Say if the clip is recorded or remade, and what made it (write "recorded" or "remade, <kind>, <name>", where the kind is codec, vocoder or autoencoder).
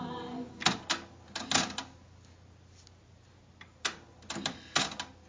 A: recorded